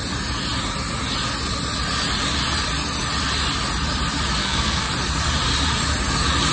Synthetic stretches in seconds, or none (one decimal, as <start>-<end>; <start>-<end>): 4.4-4.9